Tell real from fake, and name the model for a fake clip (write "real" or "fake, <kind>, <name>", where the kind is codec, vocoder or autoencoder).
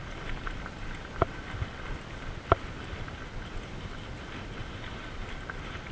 real